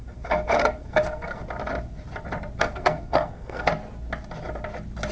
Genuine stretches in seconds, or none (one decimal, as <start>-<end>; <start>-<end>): 1.4-2.6; 3.7-5.1